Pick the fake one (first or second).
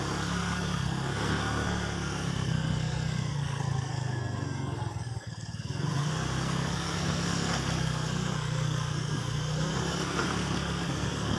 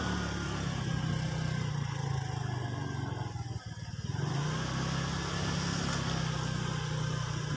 first